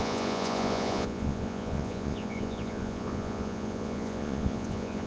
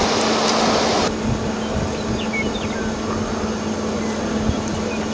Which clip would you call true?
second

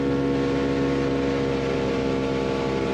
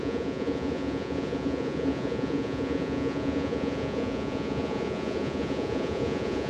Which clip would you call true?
first